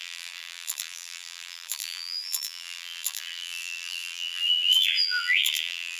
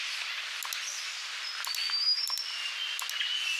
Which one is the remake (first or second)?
first